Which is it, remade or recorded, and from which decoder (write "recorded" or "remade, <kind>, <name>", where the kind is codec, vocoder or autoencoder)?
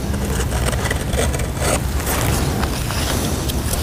recorded